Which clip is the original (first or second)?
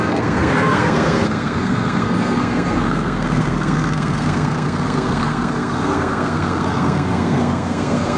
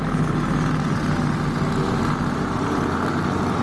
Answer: second